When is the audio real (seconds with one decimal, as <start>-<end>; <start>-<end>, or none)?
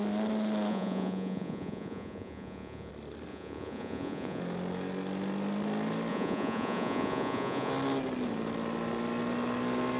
0.0-0.7; 2.9-3.3; 4.4-6.1; 7.7-10.0